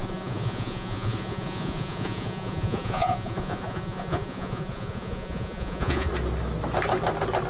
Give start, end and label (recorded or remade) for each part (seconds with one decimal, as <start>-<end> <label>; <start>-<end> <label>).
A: 0.0-6.1 remade; 6.1-7.5 recorded